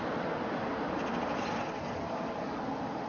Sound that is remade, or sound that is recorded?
recorded